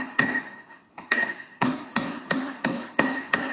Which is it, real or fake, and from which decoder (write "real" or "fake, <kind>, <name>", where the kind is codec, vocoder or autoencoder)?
fake, codec, SNAC